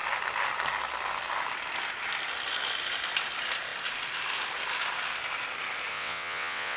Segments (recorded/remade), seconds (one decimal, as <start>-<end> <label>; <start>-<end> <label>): 0.0-5.9 recorded; 5.9-6.8 remade